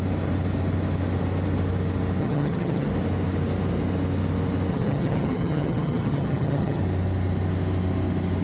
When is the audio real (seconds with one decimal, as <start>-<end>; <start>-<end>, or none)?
0.0-2.2; 2.9-4.7; 6.8-8.4